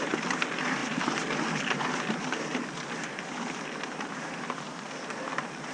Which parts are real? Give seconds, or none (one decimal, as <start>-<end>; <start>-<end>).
0.0-5.7